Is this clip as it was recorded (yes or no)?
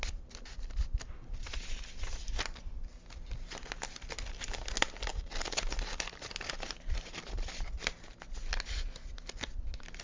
yes